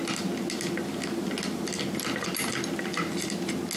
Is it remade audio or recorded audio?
recorded